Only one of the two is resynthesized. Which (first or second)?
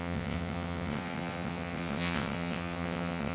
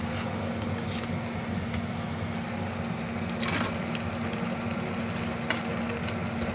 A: first